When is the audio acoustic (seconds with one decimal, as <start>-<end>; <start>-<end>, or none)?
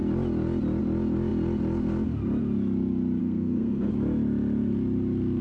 0.0-3.2; 3.9-5.4